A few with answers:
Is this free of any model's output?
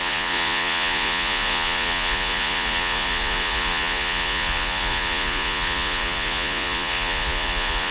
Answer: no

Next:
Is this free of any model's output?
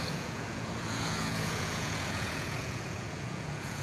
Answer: no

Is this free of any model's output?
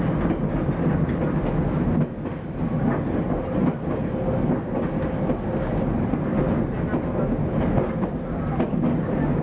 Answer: yes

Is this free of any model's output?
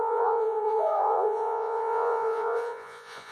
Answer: no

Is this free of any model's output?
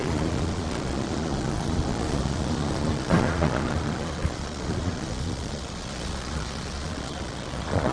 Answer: no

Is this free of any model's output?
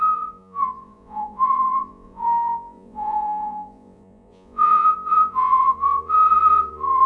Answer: no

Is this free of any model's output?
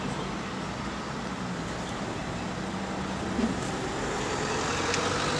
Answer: yes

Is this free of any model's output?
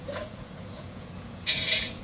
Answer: no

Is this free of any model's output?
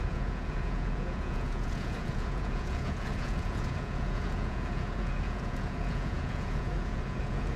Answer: no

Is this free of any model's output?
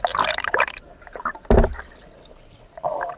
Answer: yes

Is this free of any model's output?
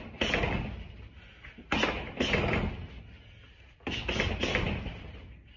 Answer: yes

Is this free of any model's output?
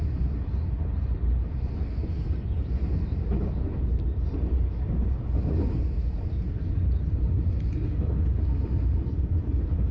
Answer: yes